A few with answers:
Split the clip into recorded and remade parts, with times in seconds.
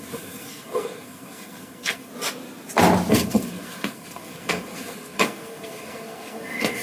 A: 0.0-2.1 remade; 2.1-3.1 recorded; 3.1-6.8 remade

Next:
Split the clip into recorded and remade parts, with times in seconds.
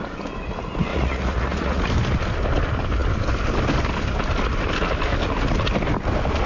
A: 0.0-0.9 recorded; 0.9-1.9 remade; 1.9-6.5 recorded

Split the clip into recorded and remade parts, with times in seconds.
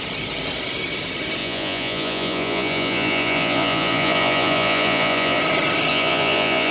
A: 0.0-1.4 recorded; 1.4-5.4 remade; 5.4-5.9 recorded; 5.9-6.7 remade